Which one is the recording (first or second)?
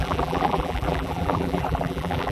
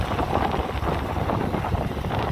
second